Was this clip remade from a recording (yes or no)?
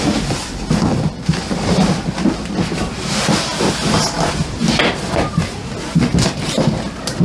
no